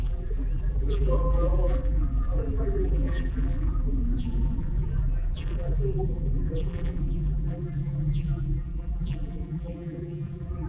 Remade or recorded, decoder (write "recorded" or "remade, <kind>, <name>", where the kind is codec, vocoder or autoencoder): remade, vocoder, BigVGAN v2